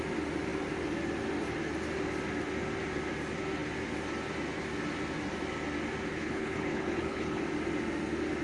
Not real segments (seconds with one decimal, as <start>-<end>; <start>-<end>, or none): 6.1-7.4